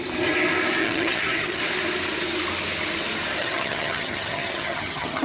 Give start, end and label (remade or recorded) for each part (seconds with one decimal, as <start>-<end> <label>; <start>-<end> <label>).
0.0-0.8 recorded; 0.8-1.6 remade; 1.6-3.4 recorded; 3.4-5.2 remade